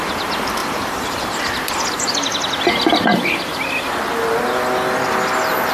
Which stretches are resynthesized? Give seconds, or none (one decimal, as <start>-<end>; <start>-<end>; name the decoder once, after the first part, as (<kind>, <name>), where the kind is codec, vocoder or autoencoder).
0.6-1.4 (vocoder, BigVGAN v2)

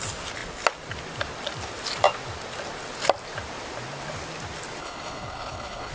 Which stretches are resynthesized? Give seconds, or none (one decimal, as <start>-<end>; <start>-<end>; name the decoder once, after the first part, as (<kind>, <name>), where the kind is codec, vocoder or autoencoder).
4.8-5.9 (codec, HILCodec)

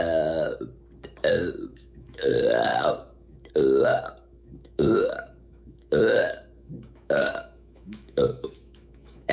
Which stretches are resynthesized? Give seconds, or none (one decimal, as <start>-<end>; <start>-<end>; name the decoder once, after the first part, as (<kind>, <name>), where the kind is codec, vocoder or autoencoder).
1.7-2.3 (autoencoder, DAC-VAE); 2.7-3.5; 3.9-9.3

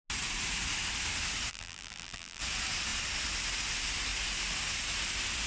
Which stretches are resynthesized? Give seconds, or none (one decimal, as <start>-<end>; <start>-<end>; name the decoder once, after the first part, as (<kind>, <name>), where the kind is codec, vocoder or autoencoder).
1.5-2.4 (vocoder, BigVGAN v2)

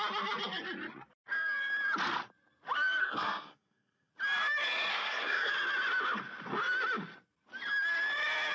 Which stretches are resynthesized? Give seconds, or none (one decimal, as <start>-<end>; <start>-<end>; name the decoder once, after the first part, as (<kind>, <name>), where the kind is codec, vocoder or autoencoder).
3.0-4.1 (codec, SNAC); 4.9-5.5

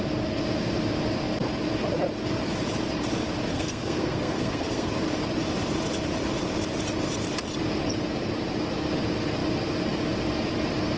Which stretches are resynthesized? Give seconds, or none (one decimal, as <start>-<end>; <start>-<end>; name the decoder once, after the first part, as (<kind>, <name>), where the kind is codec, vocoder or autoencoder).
3.5-4.9 (codec, SNAC)